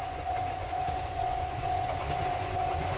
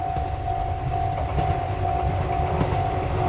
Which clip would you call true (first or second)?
second